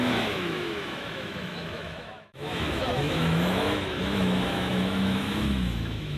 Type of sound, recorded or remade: remade